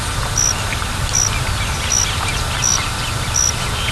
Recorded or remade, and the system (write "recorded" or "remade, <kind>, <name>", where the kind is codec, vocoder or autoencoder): recorded